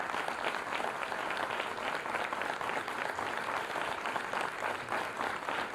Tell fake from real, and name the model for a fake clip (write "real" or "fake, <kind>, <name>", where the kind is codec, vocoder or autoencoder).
real